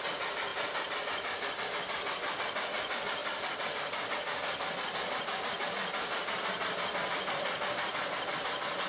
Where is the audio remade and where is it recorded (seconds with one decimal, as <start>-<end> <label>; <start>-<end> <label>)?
0.0-8.9 recorded